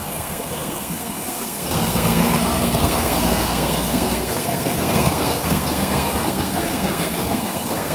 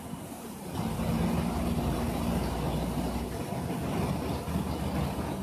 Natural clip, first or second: second